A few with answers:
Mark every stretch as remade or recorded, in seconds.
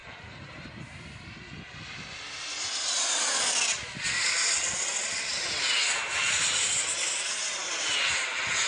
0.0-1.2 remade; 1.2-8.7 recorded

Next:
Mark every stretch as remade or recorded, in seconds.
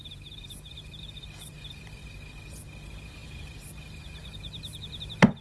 0.0-2.0 remade; 2.0-2.8 recorded; 2.8-5.4 remade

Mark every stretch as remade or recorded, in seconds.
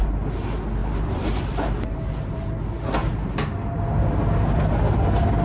0.0-0.8 recorded; 0.8-2.5 remade; 2.5-5.4 recorded